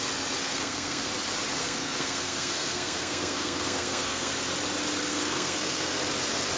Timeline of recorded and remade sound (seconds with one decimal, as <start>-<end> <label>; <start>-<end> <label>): 0.0-0.4 recorded; 0.4-1.1 remade; 1.1-1.6 recorded; 1.6-4.3 remade; 4.3-5.1 recorded; 5.1-6.0 remade; 6.0-6.6 recorded